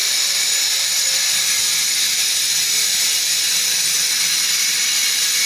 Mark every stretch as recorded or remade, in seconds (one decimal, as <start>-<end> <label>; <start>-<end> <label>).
0.0-1.2 remade; 1.2-1.6 recorded; 1.6-2.2 remade; 2.2-5.5 recorded